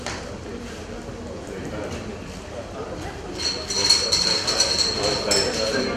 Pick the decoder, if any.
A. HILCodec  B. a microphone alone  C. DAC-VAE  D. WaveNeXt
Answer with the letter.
B